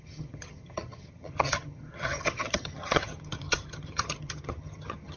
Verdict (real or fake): fake